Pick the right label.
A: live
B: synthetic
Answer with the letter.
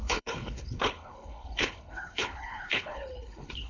B